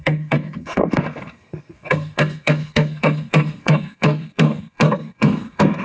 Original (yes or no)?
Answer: no